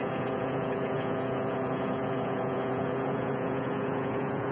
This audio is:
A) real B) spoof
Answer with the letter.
B